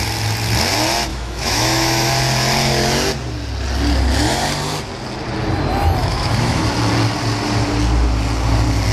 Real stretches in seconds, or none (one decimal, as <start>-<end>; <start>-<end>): 0.0-1.1; 2.1-6.0; 6.6-8.9